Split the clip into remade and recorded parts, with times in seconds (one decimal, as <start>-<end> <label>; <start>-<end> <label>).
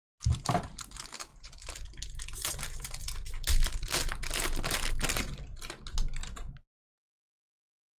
0.0-1.3 recorded; 1.3-1.8 remade; 1.8-8.0 recorded